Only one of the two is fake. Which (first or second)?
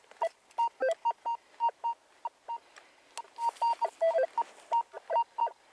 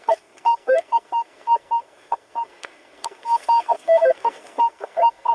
second